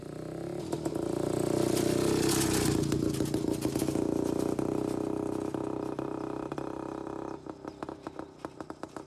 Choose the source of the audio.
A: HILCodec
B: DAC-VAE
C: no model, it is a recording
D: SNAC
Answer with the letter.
C